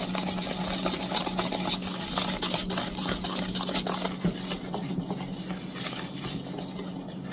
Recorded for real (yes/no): yes